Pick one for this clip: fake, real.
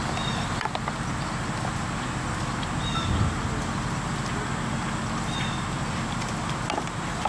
real